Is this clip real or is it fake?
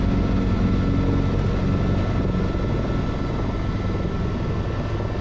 real